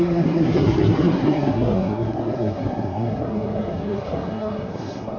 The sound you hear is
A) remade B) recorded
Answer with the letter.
A